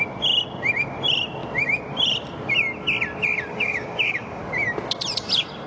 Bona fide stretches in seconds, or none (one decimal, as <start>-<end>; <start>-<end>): 0.0-3.5; 4.4-5.7